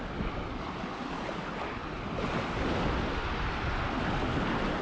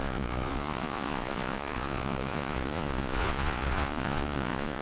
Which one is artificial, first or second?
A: second